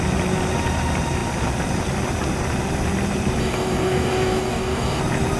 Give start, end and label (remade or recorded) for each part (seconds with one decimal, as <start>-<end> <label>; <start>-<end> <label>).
0.0-3.4 recorded; 3.4-5.0 remade; 5.0-5.4 recorded